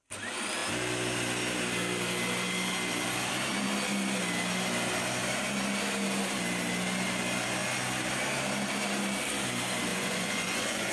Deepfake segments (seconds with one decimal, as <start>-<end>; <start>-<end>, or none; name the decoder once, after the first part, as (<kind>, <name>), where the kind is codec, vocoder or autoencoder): 9.9-10.9 (vocoder, Vocos)